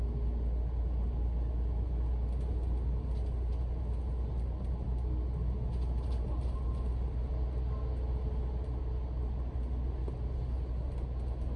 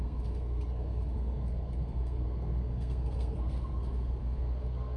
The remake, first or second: second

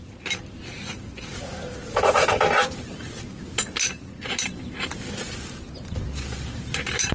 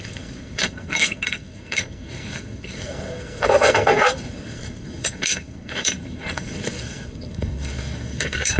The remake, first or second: second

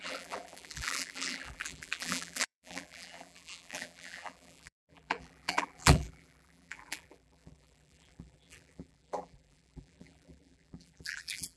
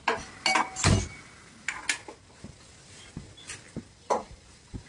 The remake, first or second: first